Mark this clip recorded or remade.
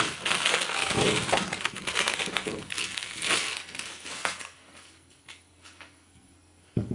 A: remade